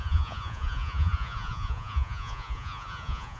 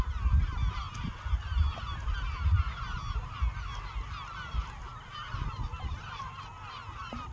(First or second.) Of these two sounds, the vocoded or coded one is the first